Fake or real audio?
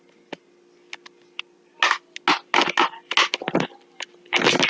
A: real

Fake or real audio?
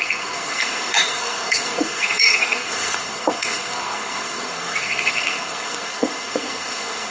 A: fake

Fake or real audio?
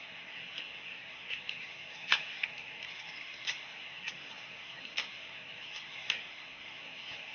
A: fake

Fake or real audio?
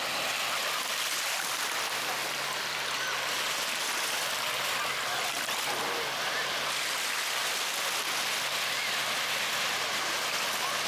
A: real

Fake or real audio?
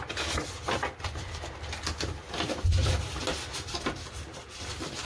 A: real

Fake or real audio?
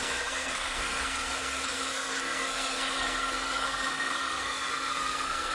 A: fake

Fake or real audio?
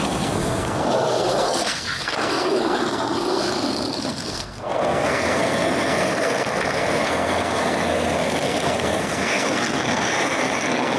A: fake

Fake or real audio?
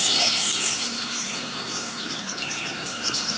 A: fake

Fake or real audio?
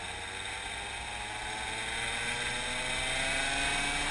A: real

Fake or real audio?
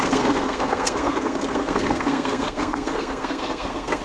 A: fake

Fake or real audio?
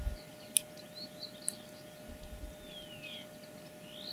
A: real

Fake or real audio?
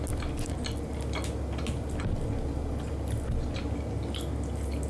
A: real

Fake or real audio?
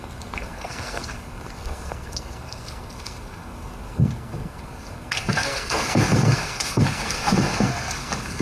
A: fake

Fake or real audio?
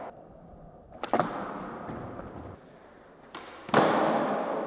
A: real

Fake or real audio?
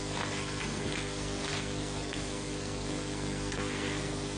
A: fake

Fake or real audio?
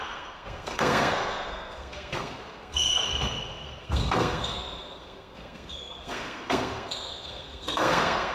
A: fake